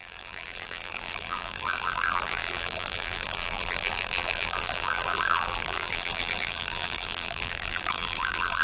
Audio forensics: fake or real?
fake